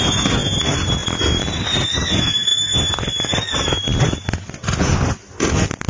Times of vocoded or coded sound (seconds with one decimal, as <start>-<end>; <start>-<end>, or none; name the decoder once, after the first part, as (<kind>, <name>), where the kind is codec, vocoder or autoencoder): none